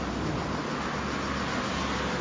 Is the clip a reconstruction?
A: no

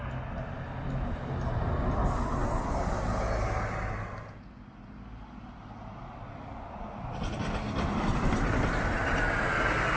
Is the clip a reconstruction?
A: no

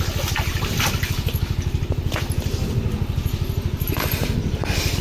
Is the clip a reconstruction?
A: no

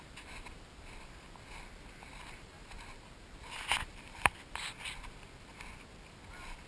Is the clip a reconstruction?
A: no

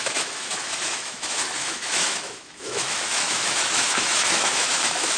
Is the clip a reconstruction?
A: yes